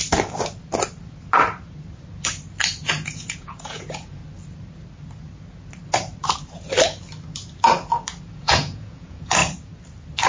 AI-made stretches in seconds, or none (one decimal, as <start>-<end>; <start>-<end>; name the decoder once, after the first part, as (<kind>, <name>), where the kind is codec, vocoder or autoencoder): 2.9-4.2 (vocoder, Vocos); 8.2-9.4